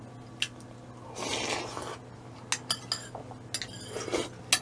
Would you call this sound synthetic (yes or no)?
no